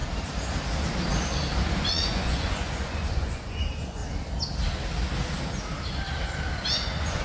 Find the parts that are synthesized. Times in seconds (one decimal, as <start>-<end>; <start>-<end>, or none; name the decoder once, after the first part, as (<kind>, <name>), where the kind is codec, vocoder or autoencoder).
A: 1.7-4.0 (vocoder, Vocos); 6.7-7.2